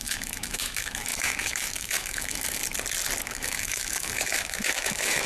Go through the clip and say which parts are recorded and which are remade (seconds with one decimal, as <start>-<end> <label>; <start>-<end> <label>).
0.0-2.6 remade; 2.6-3.2 recorded; 3.2-5.3 remade